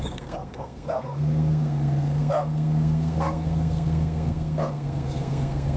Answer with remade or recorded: remade